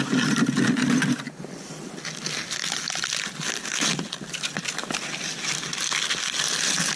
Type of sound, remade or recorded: recorded